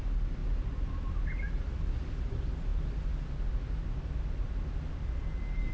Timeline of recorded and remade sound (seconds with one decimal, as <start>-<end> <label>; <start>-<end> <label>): 0.0-5.7 recorded